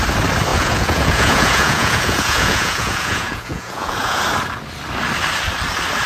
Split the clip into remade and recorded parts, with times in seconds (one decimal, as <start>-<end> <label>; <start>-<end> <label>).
0.0-0.5 recorded; 0.5-4.2 remade; 4.2-6.1 recorded

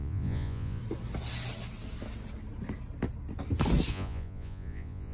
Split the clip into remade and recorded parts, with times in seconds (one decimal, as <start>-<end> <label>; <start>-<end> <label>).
0.0-0.8 remade; 0.8-3.9 recorded; 3.9-5.1 remade

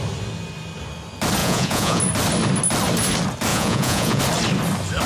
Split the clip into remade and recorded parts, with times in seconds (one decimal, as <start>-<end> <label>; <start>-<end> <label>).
0.0-1.4 recorded; 1.4-2.0 remade; 2.0-3.5 recorded; 3.5-4.2 remade; 4.2-5.1 recorded

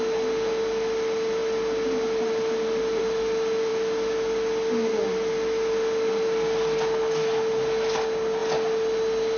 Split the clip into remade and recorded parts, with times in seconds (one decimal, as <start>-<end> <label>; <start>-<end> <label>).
0.0-9.4 recorded

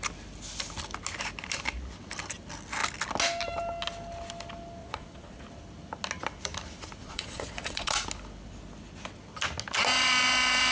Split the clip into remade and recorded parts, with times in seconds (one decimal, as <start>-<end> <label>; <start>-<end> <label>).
0.0-4.8 recorded; 4.8-5.4 remade; 5.4-7.0 recorded; 7.0-7.9 remade; 7.9-10.7 recorded

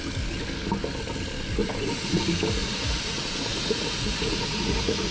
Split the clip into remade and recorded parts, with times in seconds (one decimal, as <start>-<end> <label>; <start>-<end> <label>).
0.0-1.6 recorded; 1.6-2.2 remade; 2.2-2.6 recorded; 2.6-5.1 remade

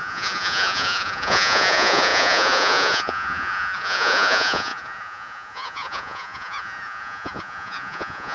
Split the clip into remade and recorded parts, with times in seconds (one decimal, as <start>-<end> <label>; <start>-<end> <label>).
0.0-8.3 remade